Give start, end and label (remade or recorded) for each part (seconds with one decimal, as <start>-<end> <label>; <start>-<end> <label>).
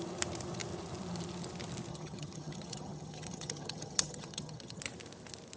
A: 0.0-1.9 recorded; 1.9-4.8 remade; 4.8-5.6 recorded